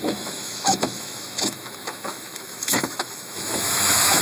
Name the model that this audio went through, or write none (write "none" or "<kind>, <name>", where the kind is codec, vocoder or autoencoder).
autoencoder, DAC-VAE